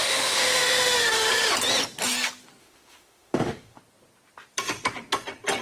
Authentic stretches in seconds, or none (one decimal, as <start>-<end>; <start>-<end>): 1.3-2.6; 3.8-5.6